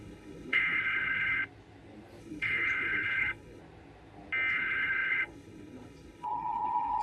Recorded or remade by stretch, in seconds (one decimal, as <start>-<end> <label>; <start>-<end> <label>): 0.0-1.4 remade; 1.4-2.2 recorded; 2.2-3.6 remade; 3.6-4.5 recorded; 4.5-7.0 remade

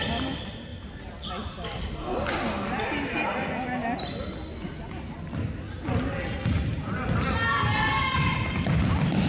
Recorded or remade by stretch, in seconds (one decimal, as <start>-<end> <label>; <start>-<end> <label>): 0.0-9.3 recorded

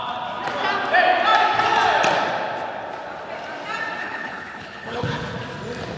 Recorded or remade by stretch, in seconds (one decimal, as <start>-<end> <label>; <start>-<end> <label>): 0.0-4.0 recorded; 4.0-5.4 remade; 5.4-6.0 recorded

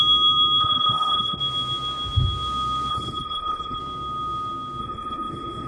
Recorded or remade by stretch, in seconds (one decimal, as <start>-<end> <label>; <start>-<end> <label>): 0.0-0.6 recorded; 0.6-1.4 remade; 1.4-2.9 recorded; 2.9-3.8 remade; 3.8-4.8 recorded; 4.8-5.7 remade

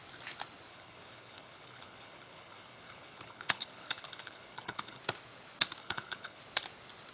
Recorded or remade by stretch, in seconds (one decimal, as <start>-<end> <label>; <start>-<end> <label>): 0.0-0.7 recorded; 0.7-5.0 remade; 5.0-5.8 recorded; 5.8-6.4 remade; 6.4-7.1 recorded

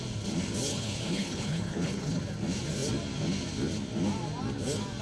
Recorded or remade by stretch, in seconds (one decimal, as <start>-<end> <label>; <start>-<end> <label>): 0.0-0.7 recorded; 0.7-2.2 remade; 2.2-5.0 recorded

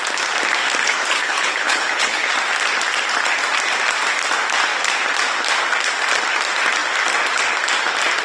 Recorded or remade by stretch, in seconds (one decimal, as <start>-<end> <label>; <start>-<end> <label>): 0.0-0.8 recorded; 0.8-2.3 remade; 2.3-8.2 recorded

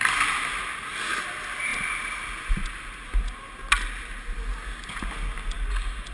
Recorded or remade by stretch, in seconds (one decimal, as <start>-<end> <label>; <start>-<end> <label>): 0.0-6.1 recorded